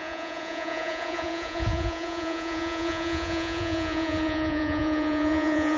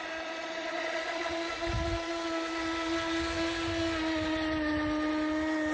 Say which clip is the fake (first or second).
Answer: first